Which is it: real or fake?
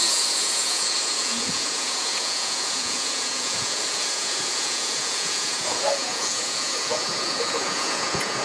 fake